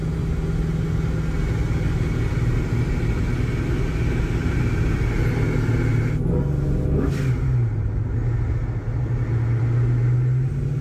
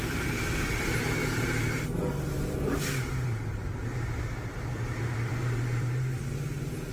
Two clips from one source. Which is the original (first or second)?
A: first